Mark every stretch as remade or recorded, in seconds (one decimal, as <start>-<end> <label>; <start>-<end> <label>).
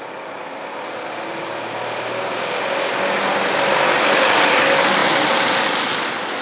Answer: 0.0-6.4 recorded